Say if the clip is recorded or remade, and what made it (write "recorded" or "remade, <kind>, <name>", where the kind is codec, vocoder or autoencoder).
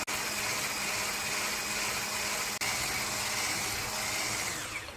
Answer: recorded